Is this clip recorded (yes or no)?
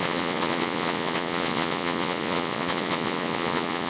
no